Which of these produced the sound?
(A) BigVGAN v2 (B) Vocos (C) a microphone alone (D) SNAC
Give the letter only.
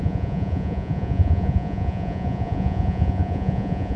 B